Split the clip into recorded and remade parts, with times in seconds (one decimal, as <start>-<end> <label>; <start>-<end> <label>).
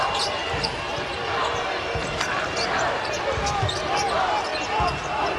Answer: 0.0-5.4 recorded